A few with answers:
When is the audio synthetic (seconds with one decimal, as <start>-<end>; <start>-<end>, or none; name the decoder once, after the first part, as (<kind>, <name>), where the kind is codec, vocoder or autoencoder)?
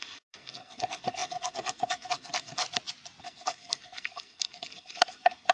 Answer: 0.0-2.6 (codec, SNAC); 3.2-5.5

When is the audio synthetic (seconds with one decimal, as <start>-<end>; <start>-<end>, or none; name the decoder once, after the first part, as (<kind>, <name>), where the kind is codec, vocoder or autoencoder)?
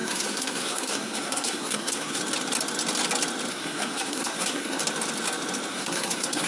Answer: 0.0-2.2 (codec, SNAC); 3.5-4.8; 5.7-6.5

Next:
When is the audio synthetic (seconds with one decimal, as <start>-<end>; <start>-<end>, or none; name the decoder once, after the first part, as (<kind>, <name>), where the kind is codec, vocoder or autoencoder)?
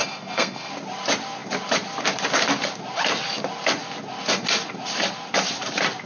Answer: 0.0-0.7 (codec, SNAC)